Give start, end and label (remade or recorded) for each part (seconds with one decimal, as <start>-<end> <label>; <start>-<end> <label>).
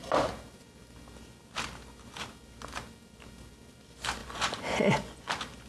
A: 0.0-4.2 recorded; 4.2-5.3 remade; 5.3-5.7 recorded